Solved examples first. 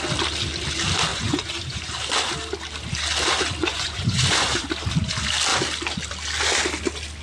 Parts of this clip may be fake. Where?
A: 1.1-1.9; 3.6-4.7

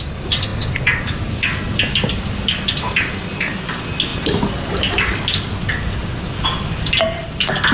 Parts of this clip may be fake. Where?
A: none

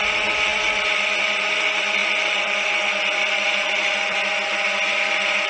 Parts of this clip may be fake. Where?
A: none

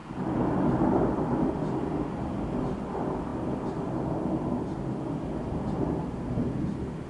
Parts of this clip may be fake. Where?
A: none